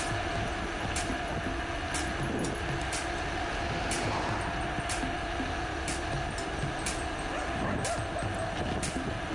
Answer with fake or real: real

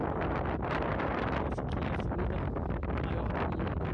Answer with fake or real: real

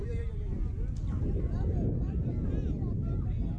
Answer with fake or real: real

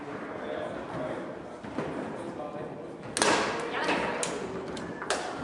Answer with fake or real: real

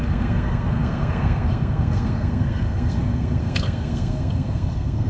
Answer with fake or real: fake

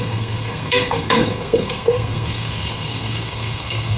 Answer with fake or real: fake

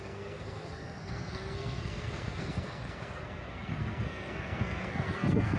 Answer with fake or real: fake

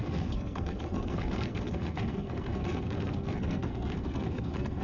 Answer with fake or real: fake